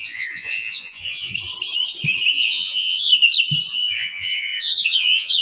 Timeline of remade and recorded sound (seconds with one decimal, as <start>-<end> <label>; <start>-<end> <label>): 0.0-1.3 remade; 1.3-2.3 recorded; 2.3-3.1 remade; 3.1-3.7 recorded; 3.7-5.4 remade